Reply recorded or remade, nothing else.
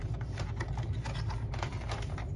remade